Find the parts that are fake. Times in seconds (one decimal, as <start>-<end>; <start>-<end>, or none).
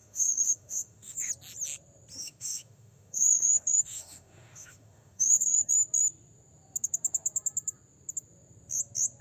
0.0-1.3; 2.2-5.7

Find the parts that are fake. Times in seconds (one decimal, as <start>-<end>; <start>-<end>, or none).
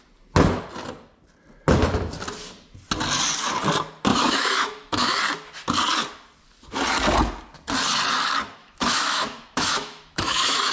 4.1-5.2; 8.6-10.7